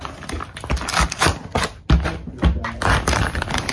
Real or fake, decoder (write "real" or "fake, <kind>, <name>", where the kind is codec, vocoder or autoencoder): real